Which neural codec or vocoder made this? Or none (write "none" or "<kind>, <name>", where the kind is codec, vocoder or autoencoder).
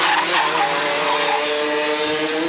none